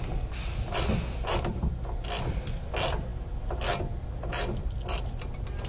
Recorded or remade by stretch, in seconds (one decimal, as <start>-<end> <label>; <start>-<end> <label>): 0.0-5.7 recorded